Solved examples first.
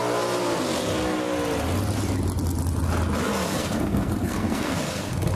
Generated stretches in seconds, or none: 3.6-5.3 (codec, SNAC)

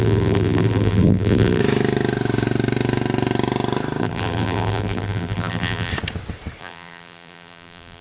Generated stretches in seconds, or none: 0.0-1.6 (vocoder, BigVGAN v2); 4.0-5.9; 6.6-8.0

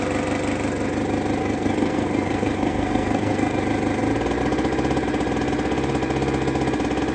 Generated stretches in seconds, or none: 1.4-3.6 (codec, SNAC)

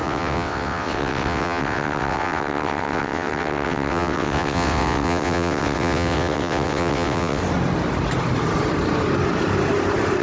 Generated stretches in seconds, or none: 0.0-7.4 (vocoder, WaveNeXt)